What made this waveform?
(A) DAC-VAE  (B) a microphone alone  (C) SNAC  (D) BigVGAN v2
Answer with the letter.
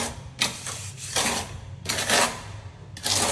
B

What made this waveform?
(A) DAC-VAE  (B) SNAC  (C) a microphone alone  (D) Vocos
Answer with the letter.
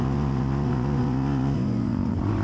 D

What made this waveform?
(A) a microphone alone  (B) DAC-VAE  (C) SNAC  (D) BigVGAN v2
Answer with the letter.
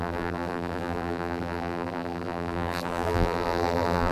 D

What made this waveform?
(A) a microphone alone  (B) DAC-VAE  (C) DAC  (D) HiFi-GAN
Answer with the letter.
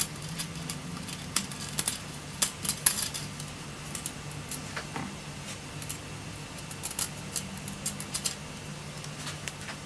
A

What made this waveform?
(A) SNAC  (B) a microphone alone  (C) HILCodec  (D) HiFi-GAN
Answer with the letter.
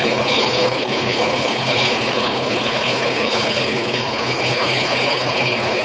C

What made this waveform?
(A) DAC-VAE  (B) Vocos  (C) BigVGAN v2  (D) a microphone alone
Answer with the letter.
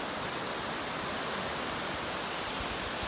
D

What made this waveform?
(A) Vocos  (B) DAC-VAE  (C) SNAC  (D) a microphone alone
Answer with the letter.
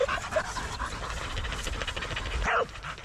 D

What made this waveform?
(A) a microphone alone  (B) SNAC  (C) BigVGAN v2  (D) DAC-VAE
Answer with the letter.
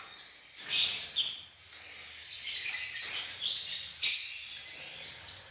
A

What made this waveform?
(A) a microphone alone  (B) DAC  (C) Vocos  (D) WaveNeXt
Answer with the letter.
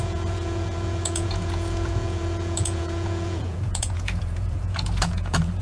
C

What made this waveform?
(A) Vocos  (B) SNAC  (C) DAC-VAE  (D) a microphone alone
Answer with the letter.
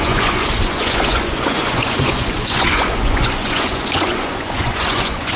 A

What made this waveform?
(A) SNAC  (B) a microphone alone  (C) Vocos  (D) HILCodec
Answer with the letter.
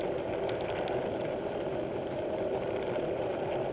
B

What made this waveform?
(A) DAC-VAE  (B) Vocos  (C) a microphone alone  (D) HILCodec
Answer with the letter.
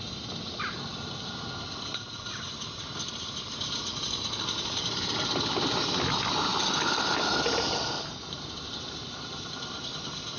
C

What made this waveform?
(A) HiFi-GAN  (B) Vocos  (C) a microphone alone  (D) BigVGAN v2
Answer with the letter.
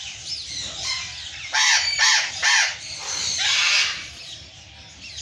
C